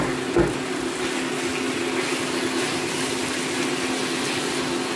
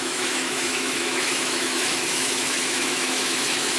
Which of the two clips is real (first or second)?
first